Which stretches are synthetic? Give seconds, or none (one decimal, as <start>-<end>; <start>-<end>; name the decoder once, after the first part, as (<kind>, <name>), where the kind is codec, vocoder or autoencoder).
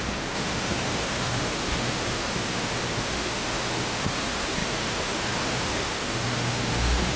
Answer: 0.0-7.2 (autoencoder, DAC-VAE)